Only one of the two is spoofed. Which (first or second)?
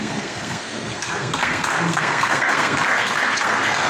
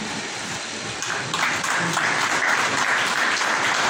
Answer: first